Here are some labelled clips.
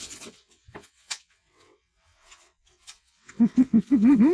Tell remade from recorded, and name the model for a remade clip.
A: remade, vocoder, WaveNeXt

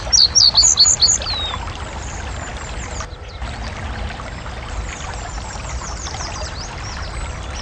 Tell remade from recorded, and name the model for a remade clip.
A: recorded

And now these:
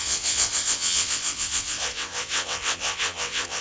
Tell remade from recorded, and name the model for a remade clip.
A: remade, vocoder, WaveNeXt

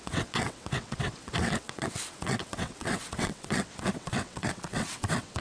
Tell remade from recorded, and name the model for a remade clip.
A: remade, vocoder, WaveNeXt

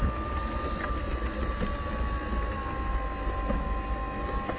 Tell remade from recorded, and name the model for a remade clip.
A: recorded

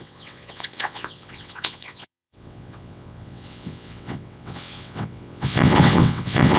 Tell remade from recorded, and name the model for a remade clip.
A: remade, vocoder, WaveNeXt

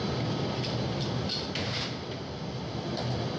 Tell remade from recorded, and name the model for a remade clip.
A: recorded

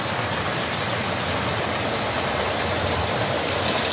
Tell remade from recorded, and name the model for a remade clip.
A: recorded